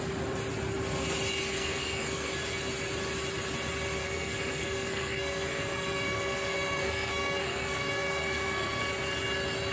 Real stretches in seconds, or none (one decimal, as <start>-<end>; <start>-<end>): 0.0-1.5; 2.3-4.0; 8.8-9.7